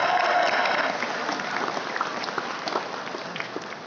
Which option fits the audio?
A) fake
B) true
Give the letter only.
B